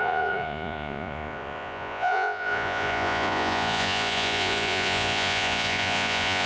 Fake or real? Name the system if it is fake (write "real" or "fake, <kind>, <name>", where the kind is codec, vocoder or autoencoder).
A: fake, vocoder, Vocos